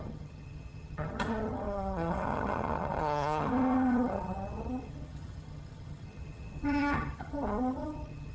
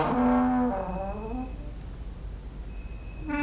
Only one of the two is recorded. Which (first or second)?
second